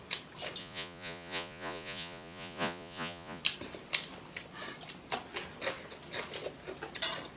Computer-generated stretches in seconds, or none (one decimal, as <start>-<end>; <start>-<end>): 0.6-3.4